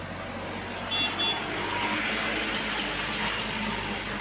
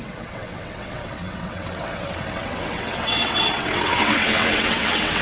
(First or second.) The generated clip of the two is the second